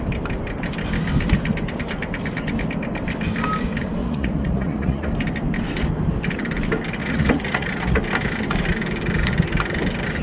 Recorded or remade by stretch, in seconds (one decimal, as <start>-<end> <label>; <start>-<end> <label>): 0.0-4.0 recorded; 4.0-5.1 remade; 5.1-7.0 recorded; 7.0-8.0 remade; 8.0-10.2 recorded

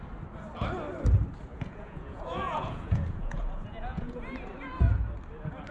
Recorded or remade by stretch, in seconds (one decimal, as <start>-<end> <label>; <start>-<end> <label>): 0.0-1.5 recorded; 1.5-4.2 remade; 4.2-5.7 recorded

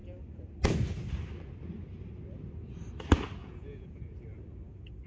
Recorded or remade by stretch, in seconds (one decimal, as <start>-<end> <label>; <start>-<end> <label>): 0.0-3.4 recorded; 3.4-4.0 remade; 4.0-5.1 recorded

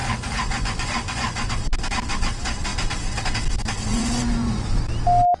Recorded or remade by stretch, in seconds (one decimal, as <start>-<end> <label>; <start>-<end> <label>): 0.0-1.5 remade; 1.5-3.9 recorded; 3.9-4.8 remade; 4.8-5.4 recorded

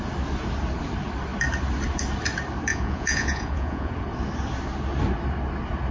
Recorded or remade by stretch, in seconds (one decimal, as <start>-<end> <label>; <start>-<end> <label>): 0.0-2.7 recorded; 2.7-3.9 remade; 3.9-5.9 recorded